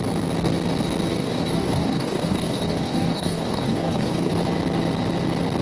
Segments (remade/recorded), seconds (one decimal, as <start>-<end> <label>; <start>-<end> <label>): 0.0-1.1 recorded; 1.1-4.3 remade; 4.3-5.6 recorded